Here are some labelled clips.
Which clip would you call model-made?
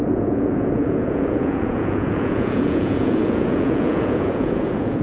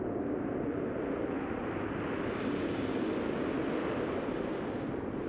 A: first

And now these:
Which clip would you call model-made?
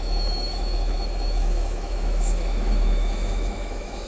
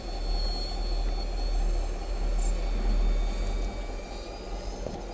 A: first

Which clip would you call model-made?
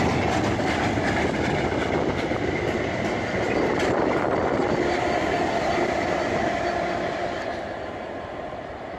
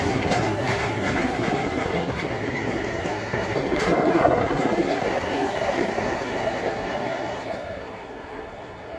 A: second